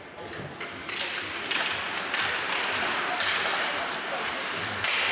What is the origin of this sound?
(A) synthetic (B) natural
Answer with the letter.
B